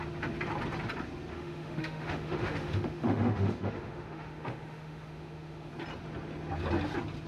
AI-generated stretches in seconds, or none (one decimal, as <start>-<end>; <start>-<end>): 1.3-5.7